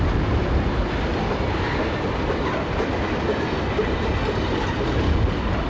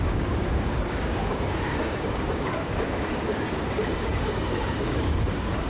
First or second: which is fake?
second